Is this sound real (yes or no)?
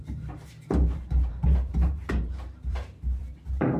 no